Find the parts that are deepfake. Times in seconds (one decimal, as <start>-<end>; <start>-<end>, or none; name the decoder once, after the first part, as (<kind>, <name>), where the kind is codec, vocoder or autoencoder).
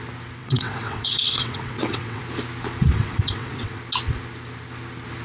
0.4-2.2 (vocoder, WaveNeXt); 2.8-3.8